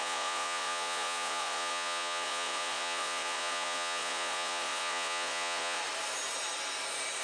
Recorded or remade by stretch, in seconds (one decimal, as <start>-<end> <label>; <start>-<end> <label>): 0.0-5.8 remade; 5.8-7.2 recorded